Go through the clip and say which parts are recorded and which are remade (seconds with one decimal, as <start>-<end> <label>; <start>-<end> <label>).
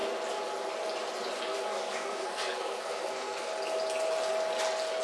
0.0-1.5 recorded; 1.5-3.5 remade; 3.5-5.0 recorded